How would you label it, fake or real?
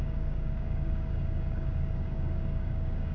fake